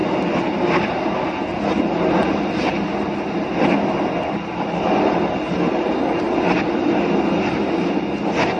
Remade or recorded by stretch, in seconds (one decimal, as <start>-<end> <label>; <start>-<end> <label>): 0.0-8.6 recorded